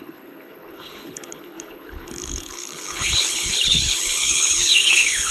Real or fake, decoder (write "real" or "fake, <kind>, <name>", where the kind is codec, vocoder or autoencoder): fake, codec, HILCodec